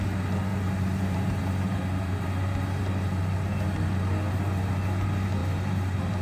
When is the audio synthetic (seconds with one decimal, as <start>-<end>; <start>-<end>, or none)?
0.5-3.2; 5.4-6.2